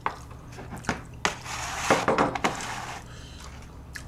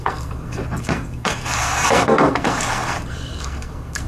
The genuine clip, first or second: first